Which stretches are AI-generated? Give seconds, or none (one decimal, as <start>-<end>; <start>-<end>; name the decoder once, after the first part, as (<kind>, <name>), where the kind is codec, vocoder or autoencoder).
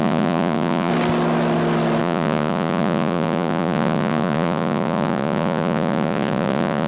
0.0-0.9 (vocoder, Vocos); 2.0-6.9